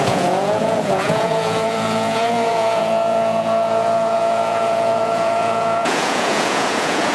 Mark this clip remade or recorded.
remade